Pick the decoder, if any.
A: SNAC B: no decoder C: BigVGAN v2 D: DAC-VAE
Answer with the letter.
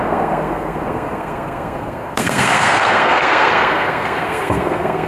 A